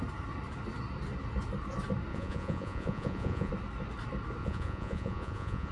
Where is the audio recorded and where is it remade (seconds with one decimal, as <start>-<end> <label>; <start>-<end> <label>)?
0.0-2.1 recorded; 2.1-3.5 remade; 3.5-4.4 recorded; 4.4-5.7 remade